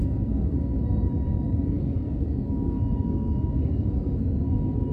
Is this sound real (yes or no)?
no